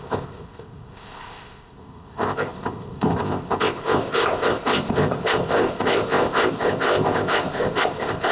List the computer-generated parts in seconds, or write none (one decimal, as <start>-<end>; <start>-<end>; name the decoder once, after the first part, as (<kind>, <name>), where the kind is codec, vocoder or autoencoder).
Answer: 0.0-8.3 (codec, ZipCodec)